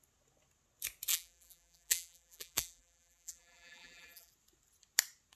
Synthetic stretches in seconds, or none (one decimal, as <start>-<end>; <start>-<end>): 1.1-4.3